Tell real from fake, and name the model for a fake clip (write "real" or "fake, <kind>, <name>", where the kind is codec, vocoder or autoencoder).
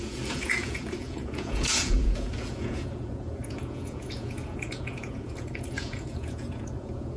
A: fake, vocoder, Vocos